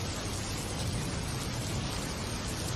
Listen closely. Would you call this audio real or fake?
real